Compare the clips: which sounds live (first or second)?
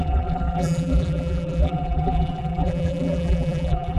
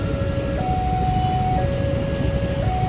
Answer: second